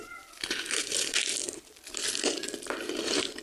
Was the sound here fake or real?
real